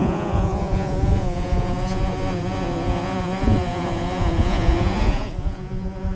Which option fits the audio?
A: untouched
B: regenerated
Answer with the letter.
B